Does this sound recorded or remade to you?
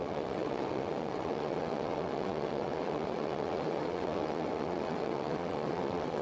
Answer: remade